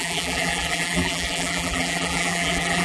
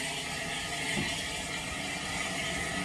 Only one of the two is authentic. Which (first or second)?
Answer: second